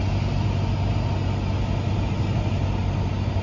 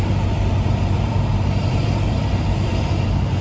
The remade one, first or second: second